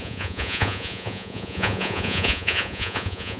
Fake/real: fake